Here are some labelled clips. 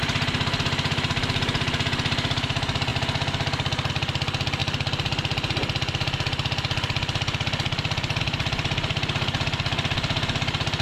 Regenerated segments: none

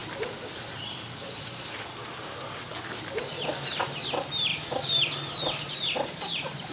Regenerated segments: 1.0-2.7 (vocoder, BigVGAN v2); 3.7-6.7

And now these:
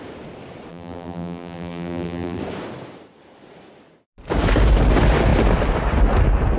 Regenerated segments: 0.7-2.4 (vocoder, BigVGAN v2)

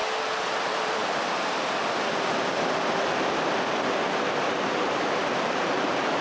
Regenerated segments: 0.6-1.0 (vocoder, BigVGAN v2); 4.7-6.2

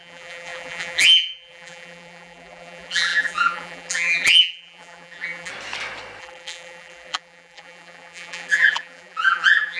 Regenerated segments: 0.0-5.5 (vocoder, BigVGAN v2); 6.2-9.8

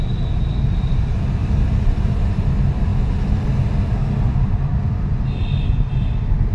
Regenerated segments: none